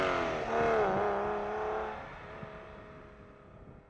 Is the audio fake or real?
real